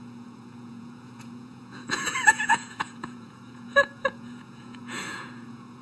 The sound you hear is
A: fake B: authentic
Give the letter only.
A